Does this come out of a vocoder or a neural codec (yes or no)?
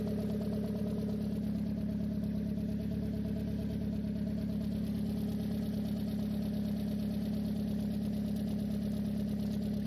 no